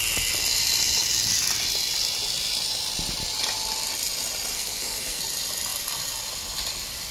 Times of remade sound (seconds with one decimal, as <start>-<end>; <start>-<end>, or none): 4.5-5.2